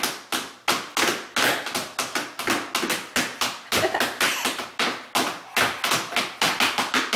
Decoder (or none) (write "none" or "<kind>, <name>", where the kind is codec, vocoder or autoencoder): none